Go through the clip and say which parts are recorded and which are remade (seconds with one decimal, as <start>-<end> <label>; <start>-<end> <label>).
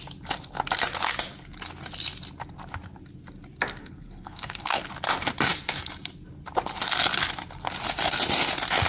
0.0-3.8 recorded; 3.8-4.9 remade; 4.9-8.9 recorded